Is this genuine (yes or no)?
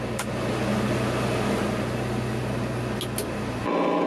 yes